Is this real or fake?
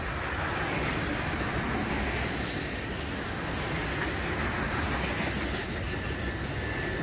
real